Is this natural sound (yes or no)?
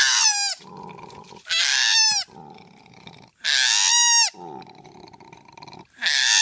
yes